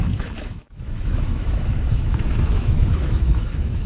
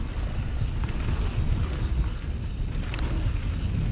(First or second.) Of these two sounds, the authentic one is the second